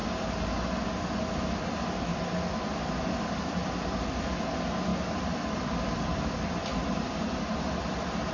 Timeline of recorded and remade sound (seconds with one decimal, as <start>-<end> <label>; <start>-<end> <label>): 0.0-1.2 recorded; 1.2-8.3 remade